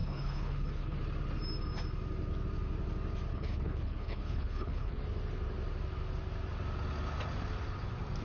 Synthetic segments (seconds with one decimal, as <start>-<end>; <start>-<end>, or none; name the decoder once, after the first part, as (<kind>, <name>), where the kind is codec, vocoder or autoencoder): 0.0-1.0 (codec, HILCodec); 3.3-5.0